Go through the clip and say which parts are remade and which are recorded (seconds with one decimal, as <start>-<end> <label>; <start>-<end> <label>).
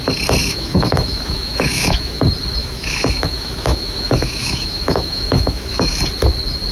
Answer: 0.0-0.4 recorded; 0.4-2.2 remade; 2.2-2.6 recorded; 2.6-6.0 remade; 6.0-6.7 recorded